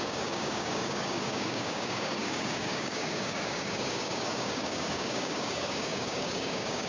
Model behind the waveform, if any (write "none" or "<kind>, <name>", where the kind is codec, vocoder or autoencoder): codec, DAC